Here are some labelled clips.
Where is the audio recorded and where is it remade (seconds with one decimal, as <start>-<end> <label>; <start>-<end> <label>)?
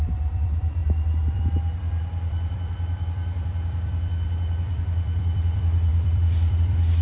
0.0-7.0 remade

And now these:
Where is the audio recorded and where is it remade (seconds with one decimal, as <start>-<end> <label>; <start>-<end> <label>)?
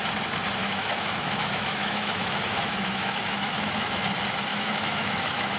0.0-0.6 recorded; 0.6-4.0 remade; 4.0-4.5 recorded; 4.5-5.6 remade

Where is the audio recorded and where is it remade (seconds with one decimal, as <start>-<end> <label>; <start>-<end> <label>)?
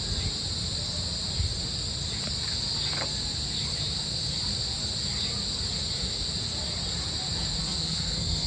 0.0-7.6 recorded; 7.6-8.5 remade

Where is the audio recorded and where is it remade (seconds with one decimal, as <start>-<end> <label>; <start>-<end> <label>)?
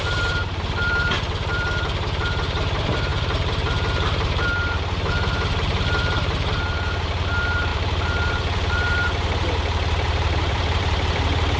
0.0-11.6 remade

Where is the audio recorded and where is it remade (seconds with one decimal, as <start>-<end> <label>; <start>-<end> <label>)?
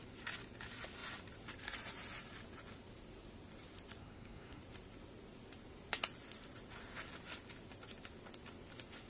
0.0-4.0 recorded; 4.0-4.6 remade; 4.6-9.1 recorded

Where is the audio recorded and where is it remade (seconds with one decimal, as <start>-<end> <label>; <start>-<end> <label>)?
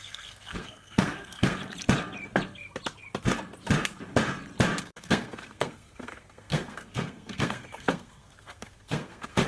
0.0-1.6 remade; 1.6-4.8 recorded; 4.8-9.5 remade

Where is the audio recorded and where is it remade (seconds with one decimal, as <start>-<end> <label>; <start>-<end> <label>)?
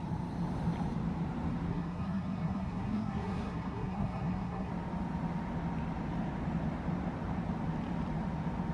0.0-1.7 recorded; 1.7-4.7 remade; 4.7-8.7 recorded